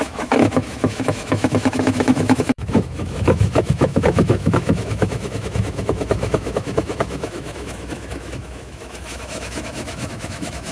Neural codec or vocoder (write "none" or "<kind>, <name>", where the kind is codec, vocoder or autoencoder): autoencoder, DAC-VAE